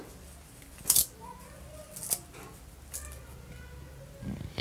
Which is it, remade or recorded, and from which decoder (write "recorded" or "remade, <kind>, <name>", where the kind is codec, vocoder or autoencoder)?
recorded